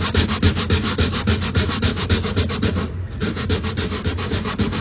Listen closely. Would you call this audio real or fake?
real